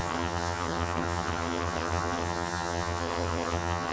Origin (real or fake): fake